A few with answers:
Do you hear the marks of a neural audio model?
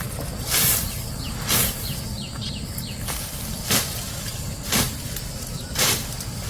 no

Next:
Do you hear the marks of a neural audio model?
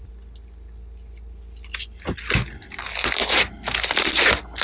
no